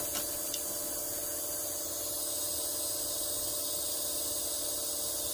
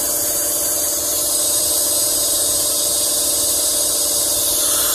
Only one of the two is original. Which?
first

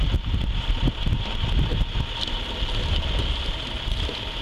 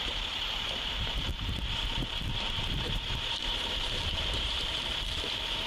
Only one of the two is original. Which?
first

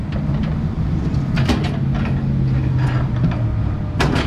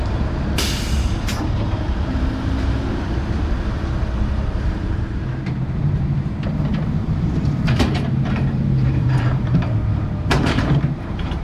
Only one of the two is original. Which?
first